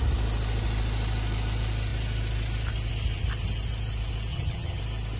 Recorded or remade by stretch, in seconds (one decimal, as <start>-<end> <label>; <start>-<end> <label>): 0.0-4.3 recorded; 4.3-4.8 remade; 4.8-5.2 recorded